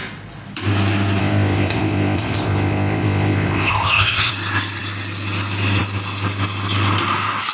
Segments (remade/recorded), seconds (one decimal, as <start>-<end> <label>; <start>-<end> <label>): 0.0-1.2 recorded; 1.2-4.3 remade; 4.3-7.5 recorded